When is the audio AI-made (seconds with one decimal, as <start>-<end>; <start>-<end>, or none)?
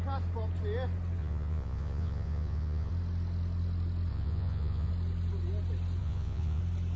1.2-2.9; 4.1-4.9; 6.0-6.6